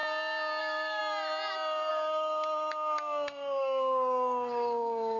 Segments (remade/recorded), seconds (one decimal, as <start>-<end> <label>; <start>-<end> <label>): 0.0-0.6 recorded; 0.6-1.0 remade; 1.0-1.9 recorded; 1.9-5.2 remade